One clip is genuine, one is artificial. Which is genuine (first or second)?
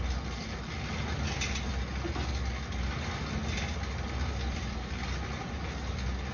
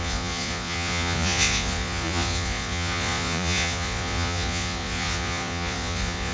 first